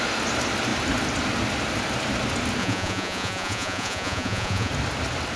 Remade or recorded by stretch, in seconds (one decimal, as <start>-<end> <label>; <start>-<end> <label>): 0.0-2.6 recorded; 2.6-4.7 remade; 4.7-5.4 recorded